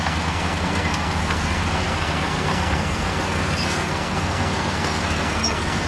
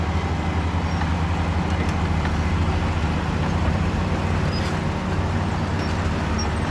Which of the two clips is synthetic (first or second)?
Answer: first